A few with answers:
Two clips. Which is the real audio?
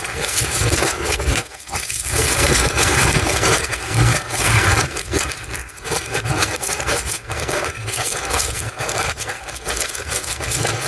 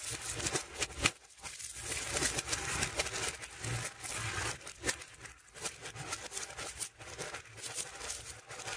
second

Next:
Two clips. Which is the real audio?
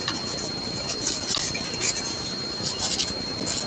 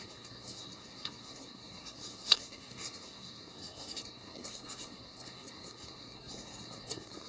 first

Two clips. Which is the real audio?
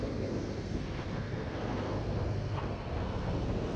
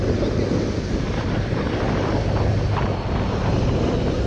second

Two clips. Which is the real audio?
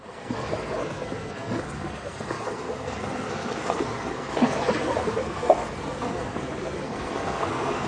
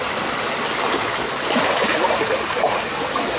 second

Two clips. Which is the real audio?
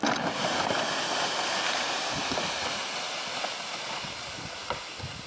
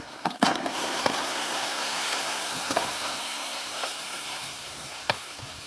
first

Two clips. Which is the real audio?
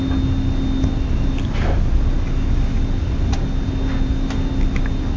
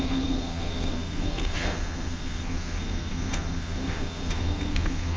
first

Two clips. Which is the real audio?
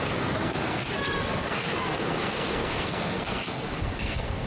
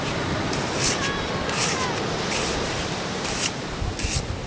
second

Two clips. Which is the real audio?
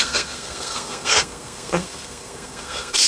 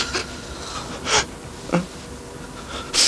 second